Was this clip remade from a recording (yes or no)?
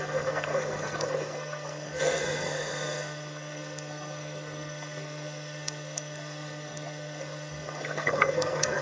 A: yes